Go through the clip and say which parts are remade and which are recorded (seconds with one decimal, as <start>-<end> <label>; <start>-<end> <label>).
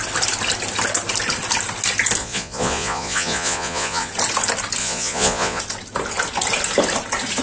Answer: 0.0-2.2 recorded; 2.2-4.1 remade; 4.1-4.8 recorded; 4.8-5.6 remade; 5.6-7.4 recorded